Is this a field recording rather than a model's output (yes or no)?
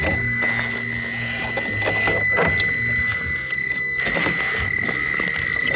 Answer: yes